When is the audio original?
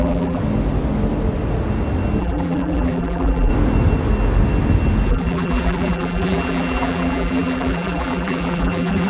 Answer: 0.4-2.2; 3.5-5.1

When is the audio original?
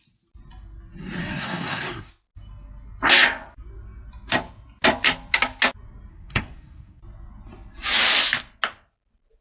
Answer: 0.0-1.2; 2.1-6.1; 7.0-9.4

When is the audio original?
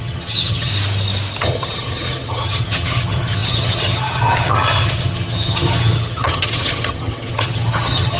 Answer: 0.7-1.4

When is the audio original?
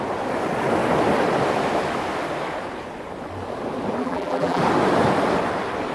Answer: 0.0-4.0; 4.6-5.9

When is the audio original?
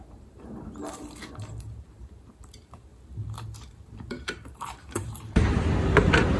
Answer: 2.9-4.1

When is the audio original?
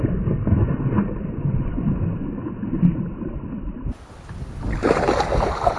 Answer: 0.0-4.8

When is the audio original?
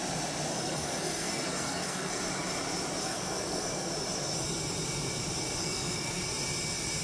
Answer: 0.0-0.5; 2.2-3.0; 3.9-5.6; 6.2-7.0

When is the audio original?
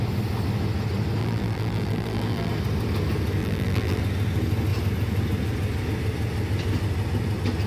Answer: 0.0-1.2; 2.5-3.4; 4.0-7.7